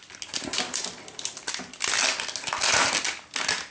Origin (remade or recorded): recorded